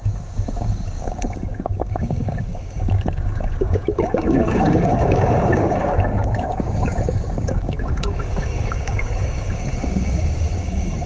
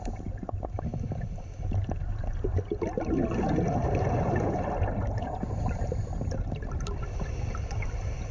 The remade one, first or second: first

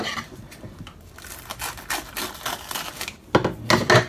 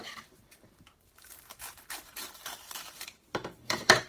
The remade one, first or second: second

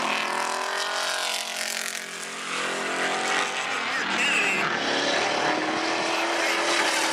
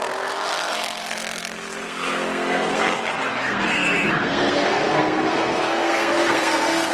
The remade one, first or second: second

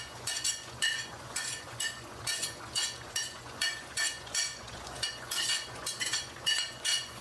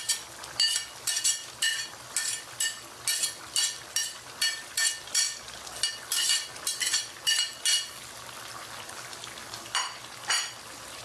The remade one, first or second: first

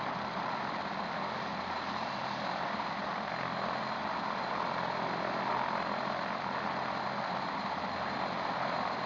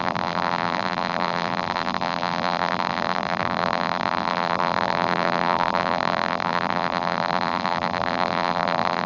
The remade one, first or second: second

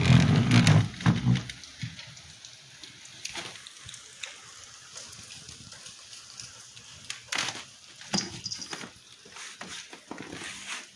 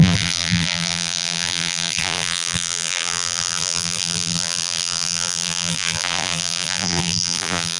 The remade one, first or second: second